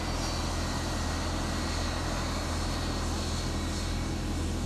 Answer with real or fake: real